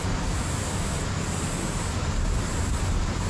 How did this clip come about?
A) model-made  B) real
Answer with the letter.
B